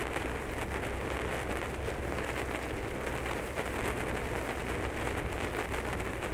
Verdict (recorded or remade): recorded